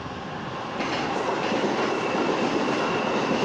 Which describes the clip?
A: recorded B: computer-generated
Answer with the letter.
A